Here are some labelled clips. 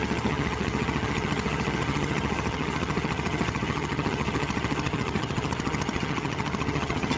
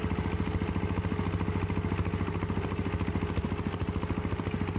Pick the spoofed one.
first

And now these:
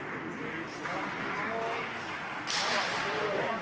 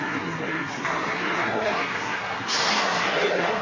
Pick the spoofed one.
second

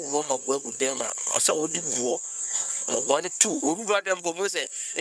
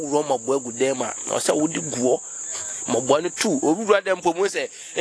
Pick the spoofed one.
first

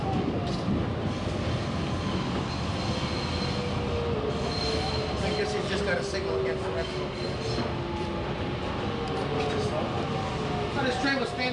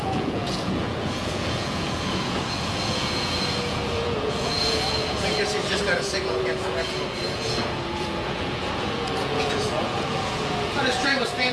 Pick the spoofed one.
second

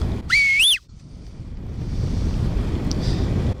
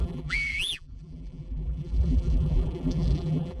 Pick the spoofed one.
second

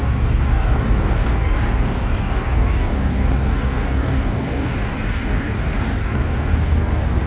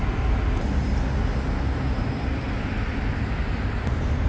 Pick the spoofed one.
first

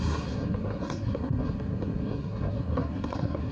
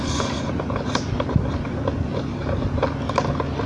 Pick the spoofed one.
first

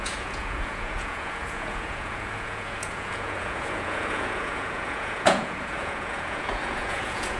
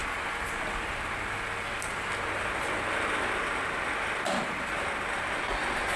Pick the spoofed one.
first